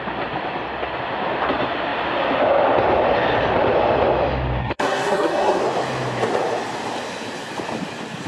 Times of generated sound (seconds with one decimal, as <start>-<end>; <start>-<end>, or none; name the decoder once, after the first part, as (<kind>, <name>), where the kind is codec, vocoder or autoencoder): 4.6-5.6 (codec, SNAC)